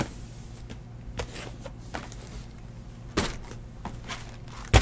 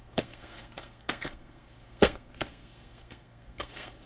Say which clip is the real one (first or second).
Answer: first